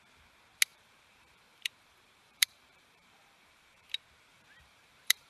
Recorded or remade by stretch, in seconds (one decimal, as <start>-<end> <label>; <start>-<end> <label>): 0.0-0.7 recorded; 0.7-3.9 remade; 3.9-4.3 recorded; 4.3-5.3 remade